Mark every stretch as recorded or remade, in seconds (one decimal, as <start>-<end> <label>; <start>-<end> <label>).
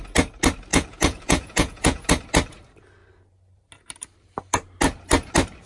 0.0-0.7 recorded; 0.7-2.1 remade; 2.1-5.7 recorded